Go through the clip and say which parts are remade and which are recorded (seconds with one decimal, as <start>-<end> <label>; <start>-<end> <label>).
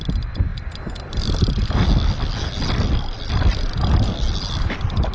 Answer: 0.0-5.1 recorded